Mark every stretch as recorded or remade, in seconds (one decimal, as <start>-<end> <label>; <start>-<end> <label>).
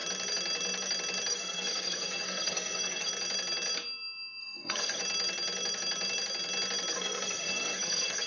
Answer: 0.0-1.3 recorded; 1.3-3.1 remade; 3.1-4.4 recorded; 4.4-5.0 remade; 5.0-6.9 recorded; 6.9-8.3 remade